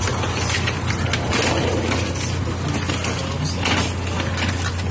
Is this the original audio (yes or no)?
yes